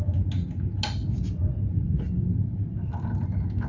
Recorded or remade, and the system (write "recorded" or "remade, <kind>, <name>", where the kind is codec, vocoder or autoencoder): recorded